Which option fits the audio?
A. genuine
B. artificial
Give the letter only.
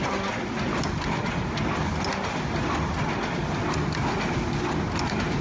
A